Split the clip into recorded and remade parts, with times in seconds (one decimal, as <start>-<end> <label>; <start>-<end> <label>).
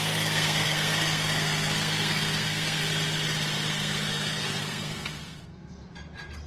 0.0-2.8 remade; 2.8-3.7 recorded; 3.7-5.8 remade; 5.8-6.5 recorded